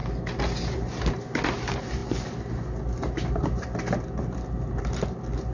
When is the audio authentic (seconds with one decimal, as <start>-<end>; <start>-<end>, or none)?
0.0-5.5